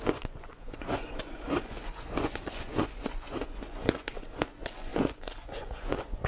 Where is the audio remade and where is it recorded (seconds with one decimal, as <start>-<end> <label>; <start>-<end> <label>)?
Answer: 0.0-6.3 remade